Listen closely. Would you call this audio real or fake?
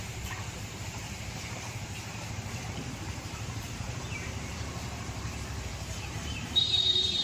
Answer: fake